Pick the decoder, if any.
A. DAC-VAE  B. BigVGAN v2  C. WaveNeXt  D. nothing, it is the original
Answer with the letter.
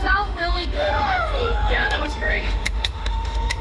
A